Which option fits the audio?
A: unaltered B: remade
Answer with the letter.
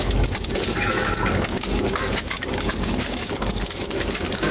B